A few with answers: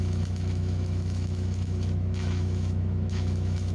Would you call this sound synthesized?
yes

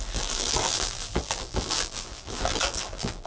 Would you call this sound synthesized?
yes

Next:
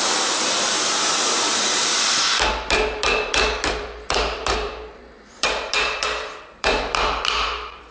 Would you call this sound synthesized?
yes